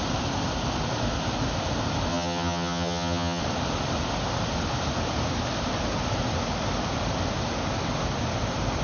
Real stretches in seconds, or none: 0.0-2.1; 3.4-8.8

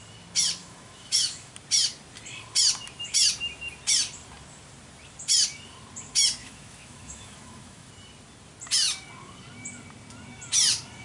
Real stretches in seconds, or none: 0.0-0.6; 1.5-6.4; 7.9-11.0

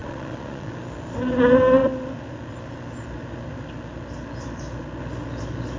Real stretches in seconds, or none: 0.7-5.8

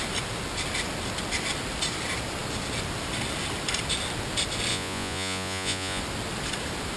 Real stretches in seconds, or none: 0.0-4.7; 6.0-7.0

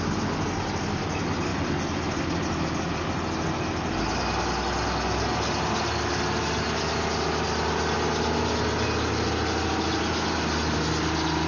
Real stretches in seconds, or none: 0.0-11.5